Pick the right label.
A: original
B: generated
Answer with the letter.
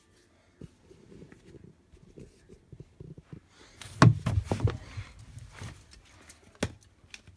A